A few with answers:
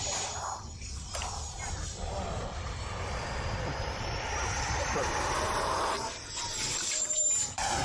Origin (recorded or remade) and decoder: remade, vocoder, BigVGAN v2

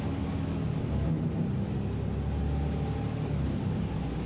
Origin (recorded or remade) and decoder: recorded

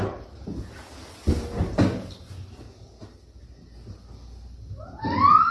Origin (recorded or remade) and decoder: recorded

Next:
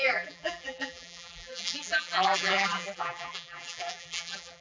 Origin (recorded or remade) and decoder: remade, vocoder, BigVGAN v2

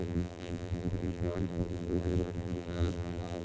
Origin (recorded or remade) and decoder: remade, vocoder, BigVGAN v2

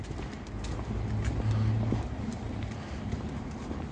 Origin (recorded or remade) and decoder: recorded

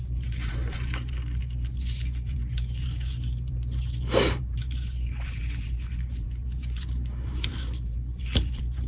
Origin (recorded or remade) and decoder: remade, vocoder, BigVGAN v2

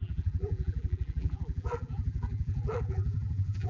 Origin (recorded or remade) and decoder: remade, vocoder, BigVGAN v2